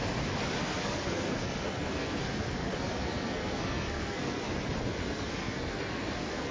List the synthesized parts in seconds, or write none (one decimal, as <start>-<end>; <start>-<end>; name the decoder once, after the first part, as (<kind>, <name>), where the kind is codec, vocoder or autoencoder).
0.6-4.5 (codec, SNAC); 5.0-6.5